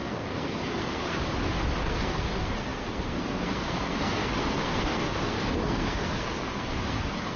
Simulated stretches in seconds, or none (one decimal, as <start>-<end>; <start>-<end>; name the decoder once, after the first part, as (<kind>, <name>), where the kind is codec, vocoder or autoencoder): 0.0-1.2 (codec, SNAC); 1.8-7.4